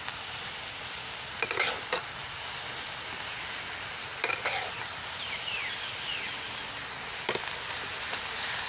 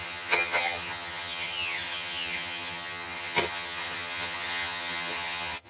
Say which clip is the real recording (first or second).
first